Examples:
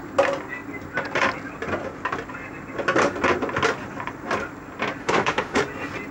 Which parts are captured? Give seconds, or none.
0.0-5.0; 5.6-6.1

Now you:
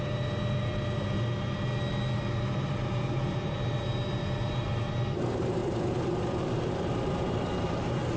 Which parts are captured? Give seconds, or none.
5.6-6.4

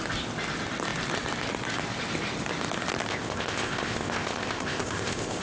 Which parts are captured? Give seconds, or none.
0.0-3.1

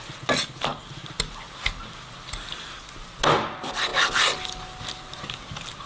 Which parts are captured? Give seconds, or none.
0.0-5.9

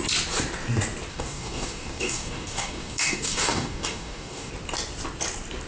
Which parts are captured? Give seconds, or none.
0.0-1.1; 4.5-5.7

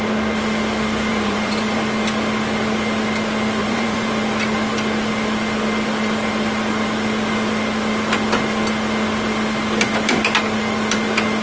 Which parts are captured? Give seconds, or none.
0.0-1.1; 1.8-3.6; 4.1-11.4

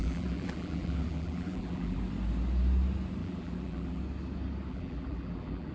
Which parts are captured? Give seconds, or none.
2.0-3.2; 4.0-4.7